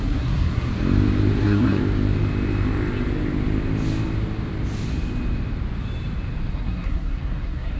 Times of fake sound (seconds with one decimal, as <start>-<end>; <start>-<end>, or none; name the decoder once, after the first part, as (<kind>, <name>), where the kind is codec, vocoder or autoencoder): 0.0-0.7 (codec, SNAC); 1.4-1.8; 6.5-7.8